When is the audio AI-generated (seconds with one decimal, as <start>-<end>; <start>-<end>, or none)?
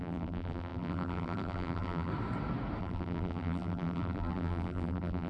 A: 0.0-2.1; 2.8-5.3